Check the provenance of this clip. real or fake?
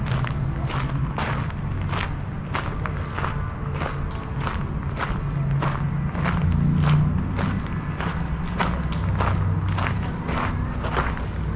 real